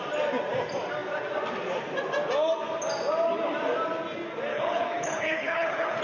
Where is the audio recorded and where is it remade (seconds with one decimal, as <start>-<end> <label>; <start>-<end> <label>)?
0.0-4.5 recorded; 4.5-6.0 remade